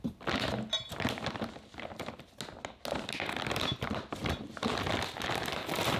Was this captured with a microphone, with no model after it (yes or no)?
yes